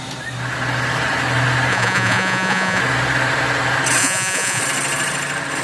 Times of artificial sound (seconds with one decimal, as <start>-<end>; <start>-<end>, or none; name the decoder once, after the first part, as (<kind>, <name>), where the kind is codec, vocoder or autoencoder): 1.7-2.8 (vocoder, Vocos); 4.0-4.6